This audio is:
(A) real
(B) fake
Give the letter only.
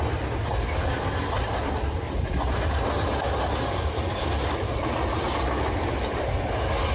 A